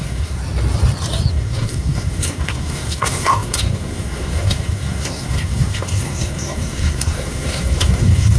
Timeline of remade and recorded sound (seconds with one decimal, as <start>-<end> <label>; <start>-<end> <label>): 0.0-0.4 remade; 0.4-1.3 recorded; 1.3-8.4 remade